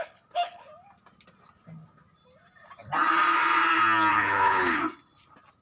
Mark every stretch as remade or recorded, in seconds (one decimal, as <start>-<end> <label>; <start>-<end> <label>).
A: 0.0-0.7 remade; 0.7-4.1 recorded; 4.1-4.8 remade; 4.8-5.6 recorded